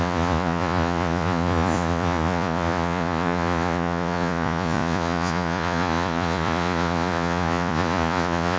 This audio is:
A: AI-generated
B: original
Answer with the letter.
A